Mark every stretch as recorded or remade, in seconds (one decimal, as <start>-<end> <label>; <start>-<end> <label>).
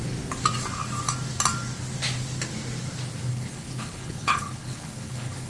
0.0-3.3 recorded; 3.3-5.5 remade